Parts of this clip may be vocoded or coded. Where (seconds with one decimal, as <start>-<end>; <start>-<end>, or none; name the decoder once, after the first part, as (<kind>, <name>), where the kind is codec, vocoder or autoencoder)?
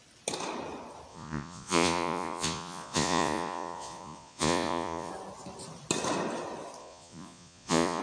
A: 1.1-5.1 (vocoder, Vocos); 6.8-8.0